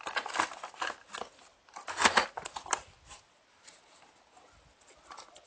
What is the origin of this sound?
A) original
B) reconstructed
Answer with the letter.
A